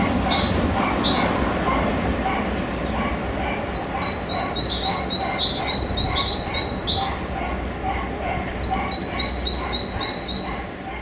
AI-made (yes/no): no